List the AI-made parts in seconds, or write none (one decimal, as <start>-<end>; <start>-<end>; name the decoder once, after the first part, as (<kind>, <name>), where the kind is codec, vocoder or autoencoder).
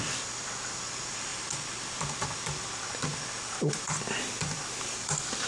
0.0-1.3 (vocoder, BigVGAN v2); 2.6-5.5